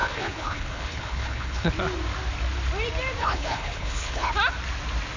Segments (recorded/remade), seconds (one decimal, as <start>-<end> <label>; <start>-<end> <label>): 0.0-1.7 remade; 1.7-3.2 recorded; 3.2-4.3 remade; 4.3-5.2 recorded